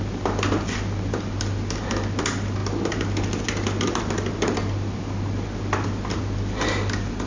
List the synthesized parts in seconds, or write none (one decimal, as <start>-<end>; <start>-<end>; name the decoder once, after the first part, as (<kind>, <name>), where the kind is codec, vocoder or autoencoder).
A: none